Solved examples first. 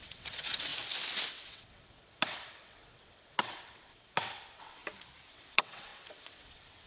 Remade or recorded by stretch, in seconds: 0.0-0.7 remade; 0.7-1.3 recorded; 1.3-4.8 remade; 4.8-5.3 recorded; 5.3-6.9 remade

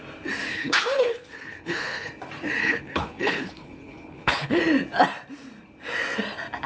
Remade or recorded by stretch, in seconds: 0.0-0.5 recorded; 0.5-2.1 remade; 2.1-2.6 recorded; 2.6-4.6 remade; 4.6-6.7 recorded

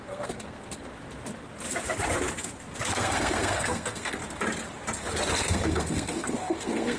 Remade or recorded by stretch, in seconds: 0.0-0.9 remade; 0.9-2.9 recorded; 2.9-4.2 remade; 4.2-5.4 recorded; 5.4-7.0 remade

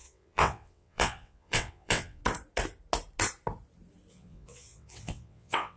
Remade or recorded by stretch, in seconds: 0.0-2.2 remade; 2.2-4.1 recorded; 4.1-5.8 remade

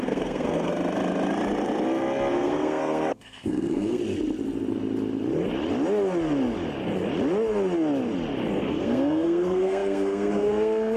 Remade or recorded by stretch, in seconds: 0.0-0.7 remade; 0.7-2.3 recorded; 2.3-4.0 remade; 4.0-8.6 recorded; 8.6-11.0 remade

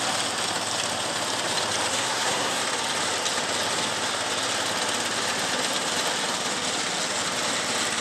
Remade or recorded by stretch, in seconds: 0.0-1.9 recorded; 1.9-2.6 remade; 2.6-8.0 recorded

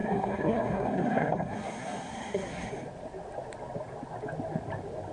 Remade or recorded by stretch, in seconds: 0.0-2.7 remade; 2.7-5.1 recorded

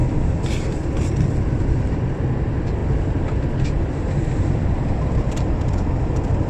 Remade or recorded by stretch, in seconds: 0.0-6.5 remade